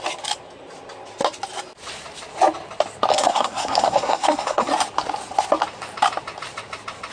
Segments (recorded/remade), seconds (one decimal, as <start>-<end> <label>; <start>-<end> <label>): 0.0-3.1 recorded; 3.1-4.7 remade; 4.7-7.1 recorded